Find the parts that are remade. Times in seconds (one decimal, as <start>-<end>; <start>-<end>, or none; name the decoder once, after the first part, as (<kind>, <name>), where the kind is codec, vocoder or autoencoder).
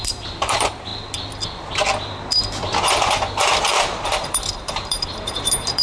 0.0-0.9 (vocoder, BigVGAN v2); 3.6-5.8